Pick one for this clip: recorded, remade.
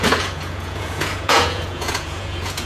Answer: remade